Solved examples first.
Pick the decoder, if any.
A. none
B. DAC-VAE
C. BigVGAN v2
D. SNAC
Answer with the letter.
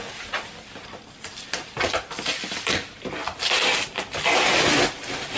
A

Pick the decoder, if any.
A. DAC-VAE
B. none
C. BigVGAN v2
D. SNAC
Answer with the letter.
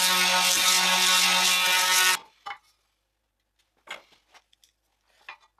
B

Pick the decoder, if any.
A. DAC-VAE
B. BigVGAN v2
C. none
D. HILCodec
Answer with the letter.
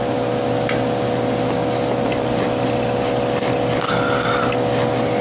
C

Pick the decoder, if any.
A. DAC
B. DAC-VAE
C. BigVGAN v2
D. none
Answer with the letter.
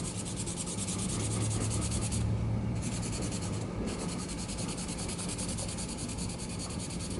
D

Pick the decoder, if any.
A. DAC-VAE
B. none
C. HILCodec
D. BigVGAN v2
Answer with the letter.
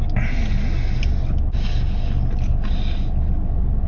B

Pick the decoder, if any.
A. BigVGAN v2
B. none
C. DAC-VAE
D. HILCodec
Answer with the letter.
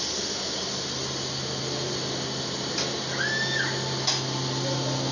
B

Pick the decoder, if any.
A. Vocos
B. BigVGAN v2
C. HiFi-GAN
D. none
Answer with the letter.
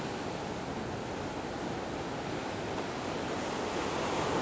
D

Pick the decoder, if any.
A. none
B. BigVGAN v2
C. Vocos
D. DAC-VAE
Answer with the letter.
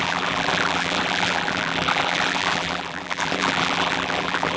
B